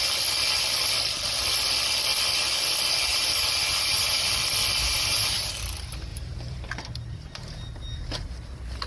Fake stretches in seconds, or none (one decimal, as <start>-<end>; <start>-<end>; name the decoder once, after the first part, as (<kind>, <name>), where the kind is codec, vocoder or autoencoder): 3.1-4.3 (vocoder, BigVGAN v2); 4.8-5.5; 6.1-6.7